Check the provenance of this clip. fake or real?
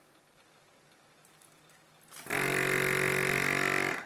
real